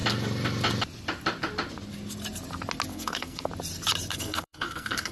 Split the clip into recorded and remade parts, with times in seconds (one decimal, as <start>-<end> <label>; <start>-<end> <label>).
0.0-2.9 recorded; 2.9-3.5 remade; 3.5-4.1 recorded; 4.1-5.1 remade